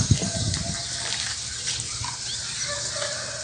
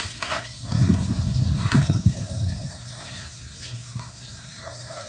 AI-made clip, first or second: second